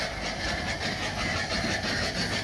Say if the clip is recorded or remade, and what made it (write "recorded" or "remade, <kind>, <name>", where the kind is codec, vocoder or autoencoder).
recorded